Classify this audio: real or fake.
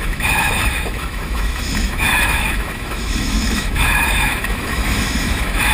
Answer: fake